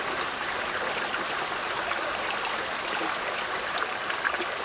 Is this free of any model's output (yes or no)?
yes